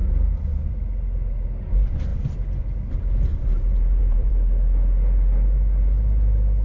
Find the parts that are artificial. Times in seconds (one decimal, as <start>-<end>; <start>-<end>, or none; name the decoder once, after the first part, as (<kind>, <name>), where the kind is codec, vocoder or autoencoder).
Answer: 3.3-4.3 (vocoder, BigVGAN v2)